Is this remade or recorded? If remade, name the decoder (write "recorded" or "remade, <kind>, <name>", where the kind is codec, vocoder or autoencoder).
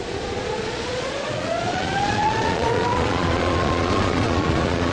remade, vocoder, Vocos